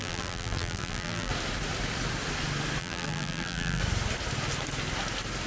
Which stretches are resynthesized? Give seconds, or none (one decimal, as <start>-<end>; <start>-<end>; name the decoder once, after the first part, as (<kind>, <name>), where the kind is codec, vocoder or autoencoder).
0.0-1.3 (vocoder, BigVGAN v2); 2.8-3.8